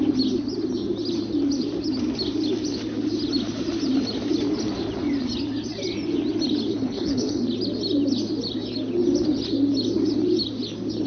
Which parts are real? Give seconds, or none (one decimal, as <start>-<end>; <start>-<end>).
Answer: 0.0-6.7; 7.4-11.1